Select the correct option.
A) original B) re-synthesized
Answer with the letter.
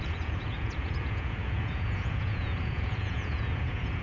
B